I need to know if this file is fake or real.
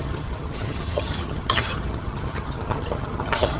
fake